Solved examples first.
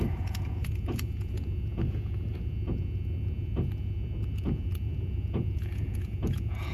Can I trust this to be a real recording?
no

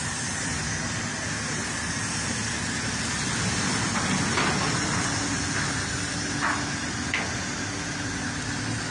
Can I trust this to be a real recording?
yes